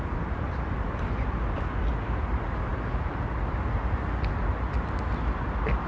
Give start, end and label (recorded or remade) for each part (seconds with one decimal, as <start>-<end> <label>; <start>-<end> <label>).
0.0-5.9 recorded